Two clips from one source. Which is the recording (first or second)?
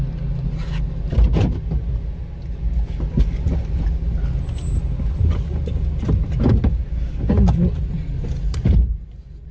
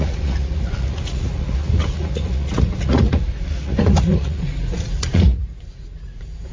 first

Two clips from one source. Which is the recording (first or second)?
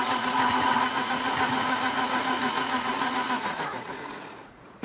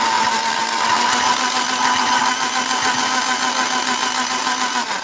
second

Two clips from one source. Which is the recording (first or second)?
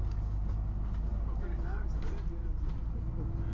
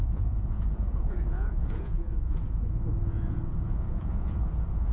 first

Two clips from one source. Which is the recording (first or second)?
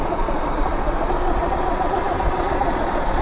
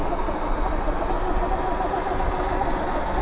second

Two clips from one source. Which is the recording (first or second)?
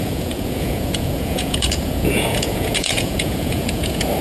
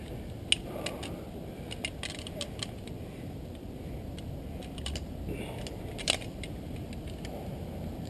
second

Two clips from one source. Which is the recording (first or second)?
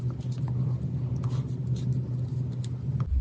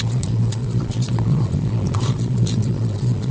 first